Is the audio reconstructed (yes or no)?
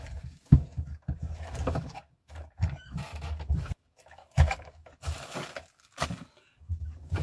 yes